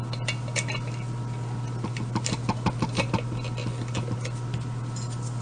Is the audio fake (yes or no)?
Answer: no